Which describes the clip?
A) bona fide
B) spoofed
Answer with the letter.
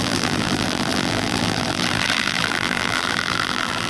B